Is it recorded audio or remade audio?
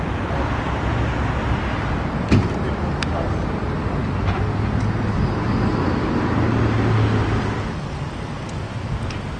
recorded